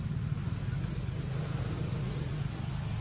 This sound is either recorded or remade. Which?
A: recorded